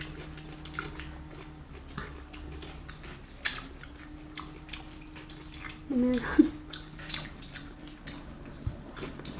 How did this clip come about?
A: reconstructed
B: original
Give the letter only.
B